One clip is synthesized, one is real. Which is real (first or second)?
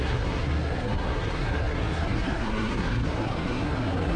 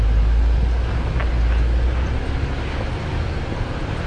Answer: second